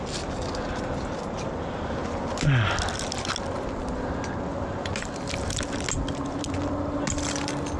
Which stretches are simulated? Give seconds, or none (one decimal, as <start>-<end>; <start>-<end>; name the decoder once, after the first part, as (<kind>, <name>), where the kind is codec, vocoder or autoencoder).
none